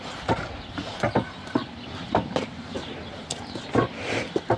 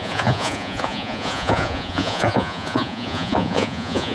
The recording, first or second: first